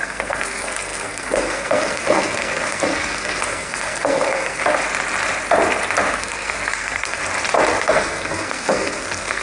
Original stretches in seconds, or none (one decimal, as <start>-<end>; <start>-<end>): 4.6-6.1; 7.2-7.8